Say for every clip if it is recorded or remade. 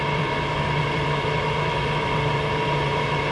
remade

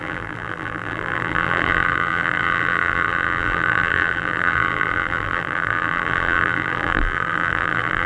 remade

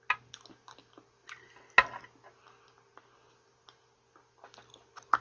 recorded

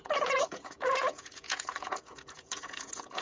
remade